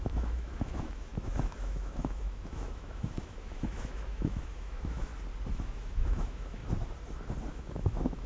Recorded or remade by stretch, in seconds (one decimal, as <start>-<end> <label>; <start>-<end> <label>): 0.0-5.1 remade; 5.1-5.6 recorded; 5.6-6.6 remade; 6.6-7.5 recorded; 7.5-8.3 remade